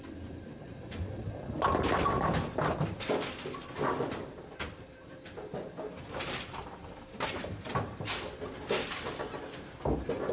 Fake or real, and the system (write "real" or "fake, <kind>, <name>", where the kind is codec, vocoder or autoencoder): real